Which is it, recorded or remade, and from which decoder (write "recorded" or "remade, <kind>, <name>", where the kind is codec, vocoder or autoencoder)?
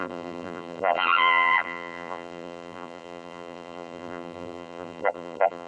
remade, vocoder, BigVGAN v2